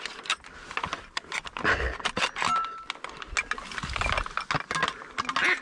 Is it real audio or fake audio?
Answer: real